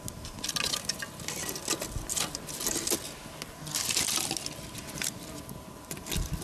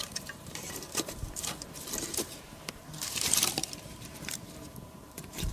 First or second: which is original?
first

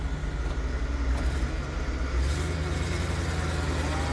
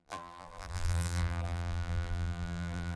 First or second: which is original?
first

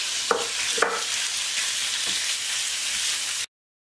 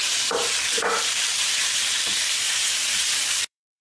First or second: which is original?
first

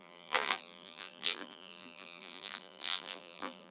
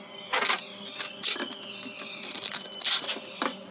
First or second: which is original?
second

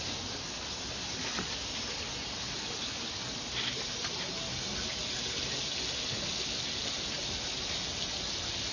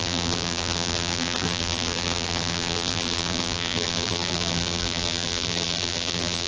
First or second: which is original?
first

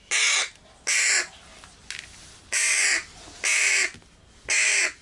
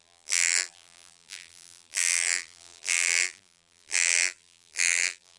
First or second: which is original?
first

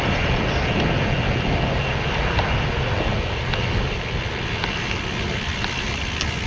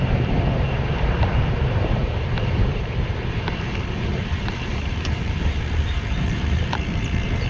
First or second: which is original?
first